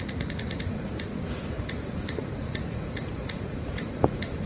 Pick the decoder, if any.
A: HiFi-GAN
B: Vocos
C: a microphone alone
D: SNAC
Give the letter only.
B